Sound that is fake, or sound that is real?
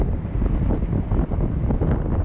real